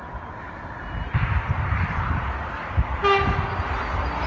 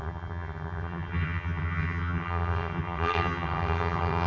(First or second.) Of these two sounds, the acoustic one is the first